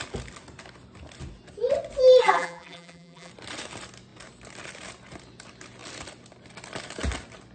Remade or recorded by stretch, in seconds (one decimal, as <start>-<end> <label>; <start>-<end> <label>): 0.0-2.2 recorded; 2.2-3.3 remade; 3.3-7.5 recorded